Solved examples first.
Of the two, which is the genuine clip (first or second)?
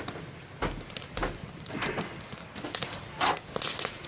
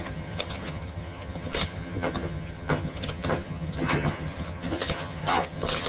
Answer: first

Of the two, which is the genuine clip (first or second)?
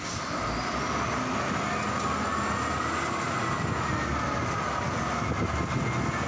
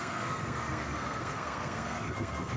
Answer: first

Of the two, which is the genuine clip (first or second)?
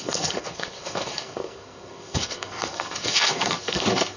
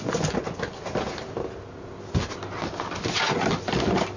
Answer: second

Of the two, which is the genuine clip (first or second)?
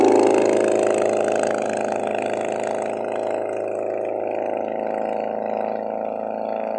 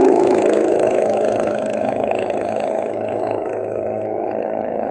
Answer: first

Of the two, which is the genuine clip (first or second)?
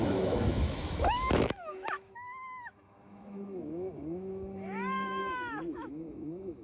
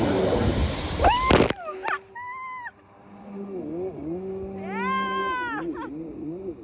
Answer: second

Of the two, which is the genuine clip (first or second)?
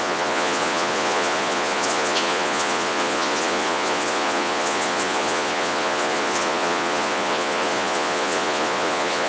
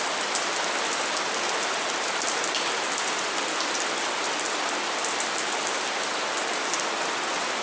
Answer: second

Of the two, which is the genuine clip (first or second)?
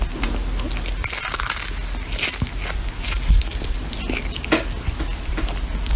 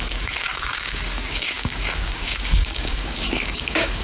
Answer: first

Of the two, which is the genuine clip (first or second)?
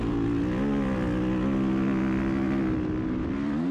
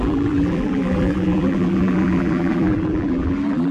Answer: first